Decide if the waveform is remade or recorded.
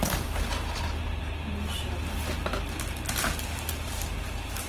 recorded